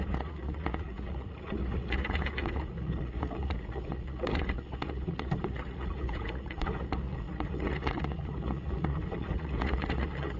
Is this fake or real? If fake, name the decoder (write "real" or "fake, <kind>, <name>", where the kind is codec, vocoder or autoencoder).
fake, vocoder, Vocos